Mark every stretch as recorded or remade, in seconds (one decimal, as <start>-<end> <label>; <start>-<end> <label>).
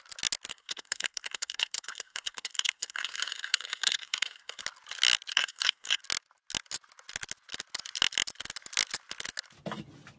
0.0-0.5 recorded; 0.5-4.6 remade; 4.6-5.3 recorded; 5.3-6.0 remade; 6.0-10.2 recorded